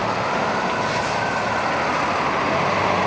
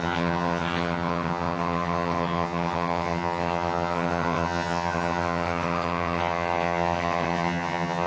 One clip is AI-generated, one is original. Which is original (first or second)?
first